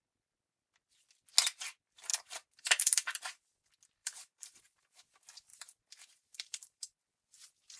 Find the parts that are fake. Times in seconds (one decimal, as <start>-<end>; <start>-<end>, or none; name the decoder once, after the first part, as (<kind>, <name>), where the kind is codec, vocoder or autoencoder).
2.1-3.2 (vocoder, BigVGAN v2); 4.0-4.6; 5.5-7.0